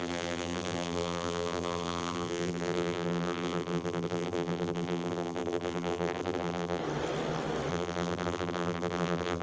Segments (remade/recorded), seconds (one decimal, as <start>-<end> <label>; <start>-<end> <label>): 0.0-6.8 remade; 6.8-7.7 recorded; 7.7-9.4 remade